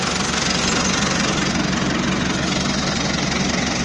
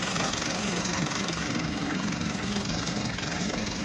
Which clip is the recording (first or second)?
first